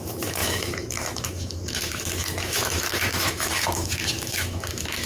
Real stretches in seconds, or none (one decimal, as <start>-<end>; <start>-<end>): none